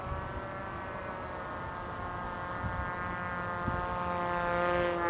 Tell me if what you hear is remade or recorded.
recorded